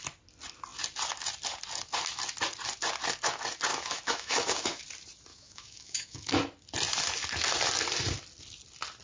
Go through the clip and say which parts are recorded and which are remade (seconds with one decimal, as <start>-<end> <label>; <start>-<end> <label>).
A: 0.0-3.7 recorded; 3.7-4.8 remade; 4.8-5.3 recorded; 5.3-6.3 remade; 6.3-9.0 recorded